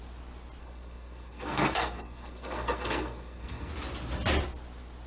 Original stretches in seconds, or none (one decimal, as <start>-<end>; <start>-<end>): 0.0-0.6; 3.7-5.1